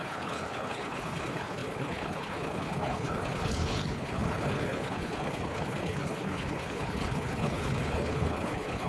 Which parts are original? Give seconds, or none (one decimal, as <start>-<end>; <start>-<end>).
none